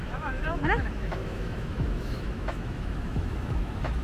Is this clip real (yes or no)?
no